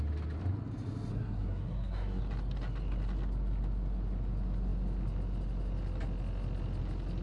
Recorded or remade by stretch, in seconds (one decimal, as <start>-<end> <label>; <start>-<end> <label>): 0.0-1.1 recorded; 1.1-2.2 remade; 2.2-7.2 recorded